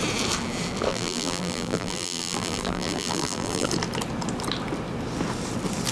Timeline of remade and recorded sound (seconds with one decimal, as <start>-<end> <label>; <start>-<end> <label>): 0.0-0.9 recorded; 0.9-3.7 remade; 3.7-5.9 recorded